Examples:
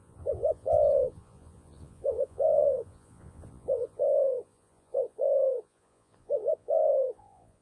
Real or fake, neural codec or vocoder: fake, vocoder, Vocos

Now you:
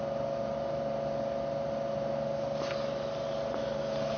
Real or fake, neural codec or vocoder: real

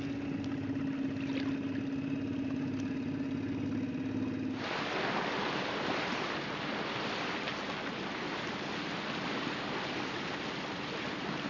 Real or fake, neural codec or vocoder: real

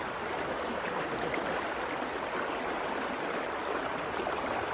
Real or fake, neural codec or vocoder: real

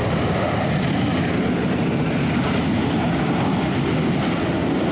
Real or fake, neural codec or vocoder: real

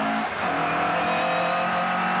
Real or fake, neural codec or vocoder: real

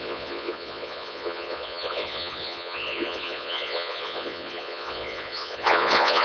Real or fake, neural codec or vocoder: fake, vocoder, Vocos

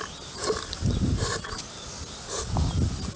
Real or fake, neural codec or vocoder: real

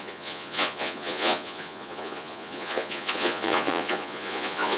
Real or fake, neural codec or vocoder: fake, vocoder, Vocos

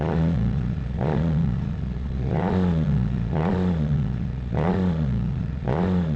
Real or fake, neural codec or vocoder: fake, vocoder, Vocos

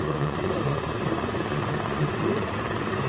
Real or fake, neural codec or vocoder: fake, vocoder, Vocos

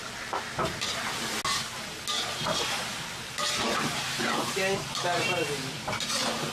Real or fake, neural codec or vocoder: real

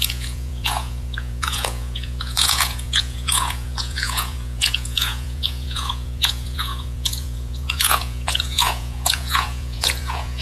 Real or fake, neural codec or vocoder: fake, vocoder, Vocos